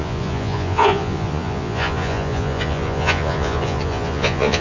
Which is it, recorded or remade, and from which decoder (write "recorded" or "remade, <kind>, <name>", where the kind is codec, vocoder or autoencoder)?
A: remade, vocoder, Vocos